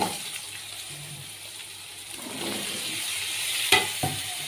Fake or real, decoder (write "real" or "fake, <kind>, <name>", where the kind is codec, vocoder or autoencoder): fake, vocoder, BigVGAN v2